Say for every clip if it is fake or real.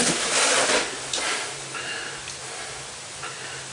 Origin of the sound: real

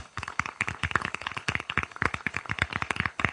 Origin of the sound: fake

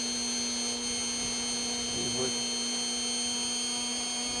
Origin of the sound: real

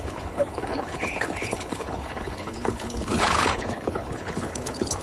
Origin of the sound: fake